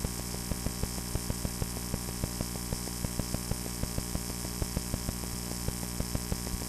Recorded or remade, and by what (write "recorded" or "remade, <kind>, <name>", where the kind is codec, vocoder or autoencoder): recorded